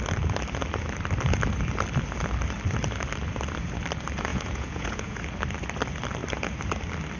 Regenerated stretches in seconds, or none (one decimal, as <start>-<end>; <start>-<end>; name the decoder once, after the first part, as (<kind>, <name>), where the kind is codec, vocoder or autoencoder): 4.3-5.2 (vocoder, Vocos)